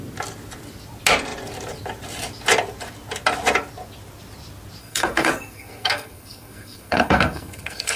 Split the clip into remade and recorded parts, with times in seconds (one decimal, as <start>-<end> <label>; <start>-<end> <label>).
0.0-4.8 recorded; 4.8-8.0 remade